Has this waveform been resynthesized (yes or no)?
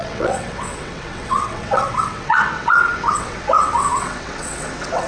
yes